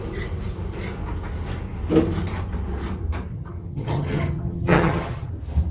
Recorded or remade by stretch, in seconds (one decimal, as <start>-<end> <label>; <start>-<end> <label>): 0.0-3.3 recorded; 3.3-5.3 remade; 5.3-5.7 recorded